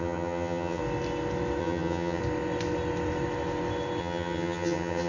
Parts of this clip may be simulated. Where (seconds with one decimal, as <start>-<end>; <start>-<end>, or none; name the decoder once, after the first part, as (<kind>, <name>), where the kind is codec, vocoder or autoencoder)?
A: 0.0-0.8 (vocoder, HiFi-GAN); 1.6-2.2; 4.0-5.1